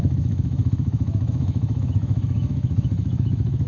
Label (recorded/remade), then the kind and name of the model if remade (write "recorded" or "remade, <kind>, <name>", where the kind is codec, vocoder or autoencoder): remade, autoencoder, DAC-VAE